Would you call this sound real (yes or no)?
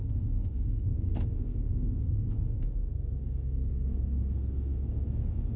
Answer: no